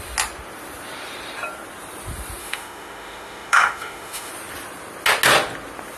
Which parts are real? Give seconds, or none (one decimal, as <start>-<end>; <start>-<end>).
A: 0.0-2.4; 4.3-6.0